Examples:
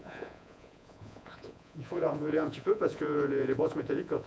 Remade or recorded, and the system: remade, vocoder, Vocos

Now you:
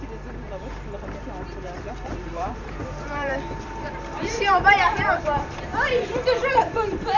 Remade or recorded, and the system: remade, vocoder, BigVGAN v2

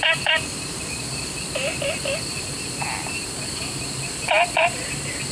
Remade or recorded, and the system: recorded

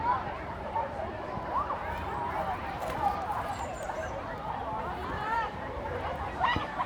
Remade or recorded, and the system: remade, vocoder, BigVGAN v2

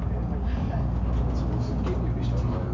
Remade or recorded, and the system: recorded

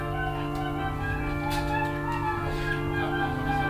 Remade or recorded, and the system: recorded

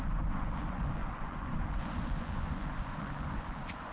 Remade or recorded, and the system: remade, vocoder, Vocos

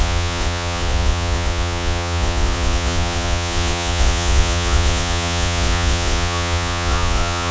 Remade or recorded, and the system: remade, vocoder, Vocos